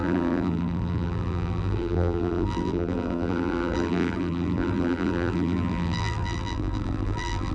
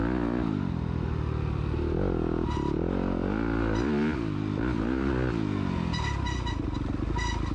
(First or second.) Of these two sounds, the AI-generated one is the first